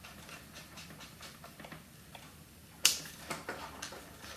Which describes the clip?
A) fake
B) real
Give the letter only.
B